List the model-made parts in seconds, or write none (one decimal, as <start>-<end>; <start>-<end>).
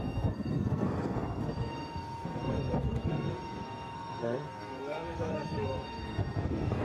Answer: 0.0-6.8